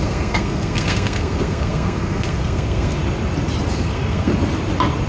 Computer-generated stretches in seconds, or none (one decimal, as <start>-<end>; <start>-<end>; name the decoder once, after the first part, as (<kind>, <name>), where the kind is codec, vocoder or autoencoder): 0.0-3.0 (codec, SNAC); 3.7-4.3